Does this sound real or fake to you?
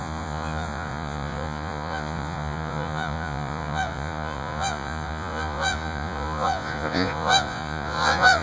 fake